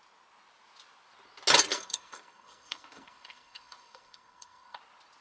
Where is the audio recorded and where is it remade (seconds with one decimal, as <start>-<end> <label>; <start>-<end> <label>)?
0.0-1.7 recorded; 1.7-4.8 remade; 4.8-5.2 recorded